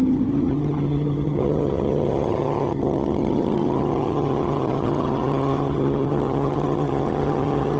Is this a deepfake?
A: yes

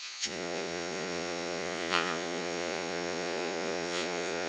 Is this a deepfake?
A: yes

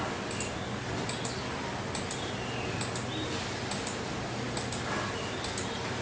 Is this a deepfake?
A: no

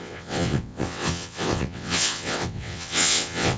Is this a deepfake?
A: yes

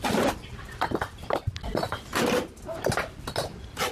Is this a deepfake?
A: no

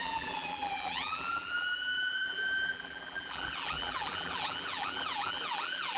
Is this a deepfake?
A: yes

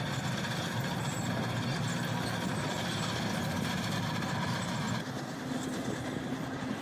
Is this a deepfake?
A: no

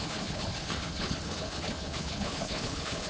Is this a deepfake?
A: yes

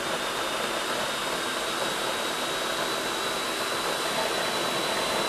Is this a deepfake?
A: no